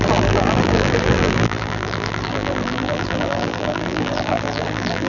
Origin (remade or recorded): remade